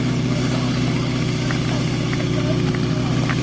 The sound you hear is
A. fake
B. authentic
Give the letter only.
B